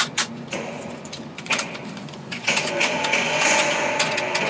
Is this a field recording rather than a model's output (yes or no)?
no